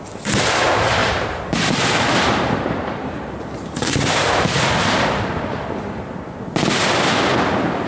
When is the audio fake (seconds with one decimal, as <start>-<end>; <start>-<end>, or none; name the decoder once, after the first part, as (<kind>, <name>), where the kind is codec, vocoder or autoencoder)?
1.0-4.6 (vocoder, BigVGAN v2)